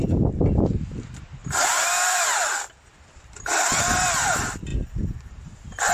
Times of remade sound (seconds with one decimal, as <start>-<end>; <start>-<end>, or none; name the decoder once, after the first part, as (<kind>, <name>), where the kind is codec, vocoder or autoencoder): 1.4-3.6 (vocoder, BigVGAN v2)